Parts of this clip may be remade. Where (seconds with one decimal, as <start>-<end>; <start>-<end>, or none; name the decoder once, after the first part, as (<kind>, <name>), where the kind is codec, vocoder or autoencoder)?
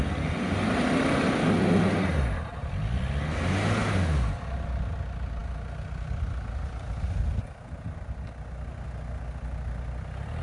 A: none